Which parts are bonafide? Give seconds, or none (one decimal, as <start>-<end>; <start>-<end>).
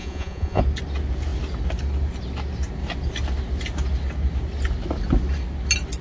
0.6-6.0